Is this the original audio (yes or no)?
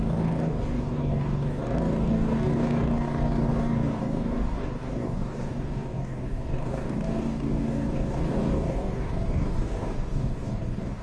no